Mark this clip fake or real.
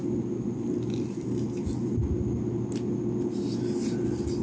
real